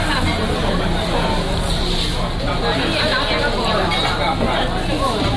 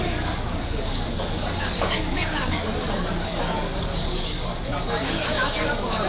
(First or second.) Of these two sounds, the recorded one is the first